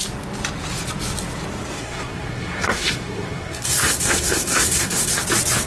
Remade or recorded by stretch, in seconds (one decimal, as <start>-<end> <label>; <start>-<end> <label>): 0.0-1.8 recorded; 1.8-5.2 remade; 5.2-5.7 recorded